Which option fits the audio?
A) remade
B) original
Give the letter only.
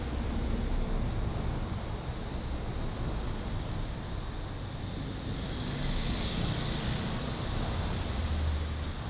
B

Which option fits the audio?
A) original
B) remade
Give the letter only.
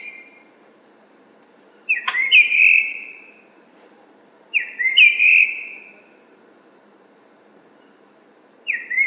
B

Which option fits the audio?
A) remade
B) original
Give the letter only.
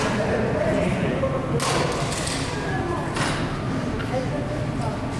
B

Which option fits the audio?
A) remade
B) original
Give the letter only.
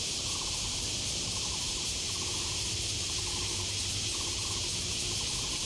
A